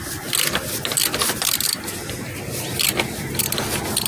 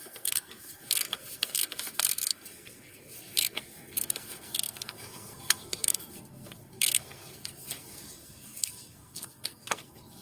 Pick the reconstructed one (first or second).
second